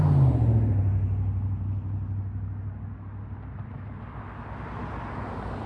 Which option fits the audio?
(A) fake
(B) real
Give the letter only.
B